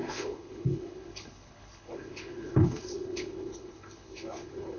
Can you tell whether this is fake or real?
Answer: fake